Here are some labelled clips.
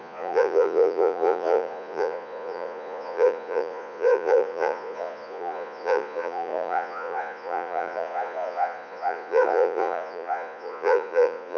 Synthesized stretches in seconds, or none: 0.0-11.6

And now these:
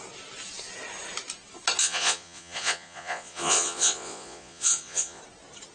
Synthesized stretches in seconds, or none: 1.8-5.2

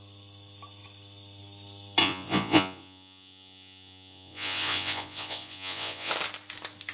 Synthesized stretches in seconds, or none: 2.0-6.1

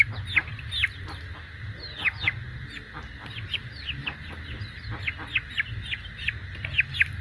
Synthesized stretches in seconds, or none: none

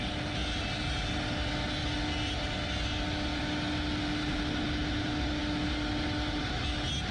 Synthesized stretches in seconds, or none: none

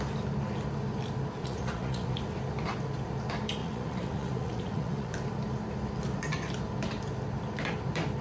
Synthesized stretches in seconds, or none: 1.4-2.2; 3.6-5.1